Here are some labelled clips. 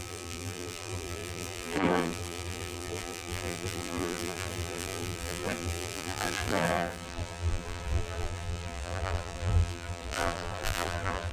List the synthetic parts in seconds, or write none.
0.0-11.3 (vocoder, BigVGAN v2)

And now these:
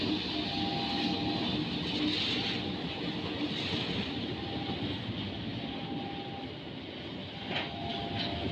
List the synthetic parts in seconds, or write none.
none

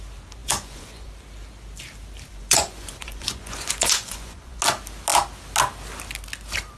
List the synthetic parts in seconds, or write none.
0.4-1.1 (vocoder, Vocos); 2.3-4.6

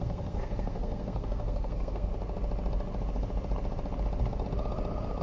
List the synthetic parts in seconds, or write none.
0.0-2.1 (codec, SNAC)

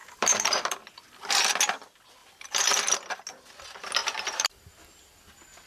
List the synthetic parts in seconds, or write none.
0.0-0.8 (vocoder, BigVGAN v2); 2.2-3.0; 4.0-5.1

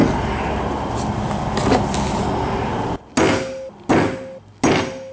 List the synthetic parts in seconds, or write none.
none

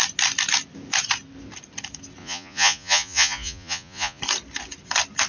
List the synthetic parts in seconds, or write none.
2.2-4.2 (vocoder, Vocos)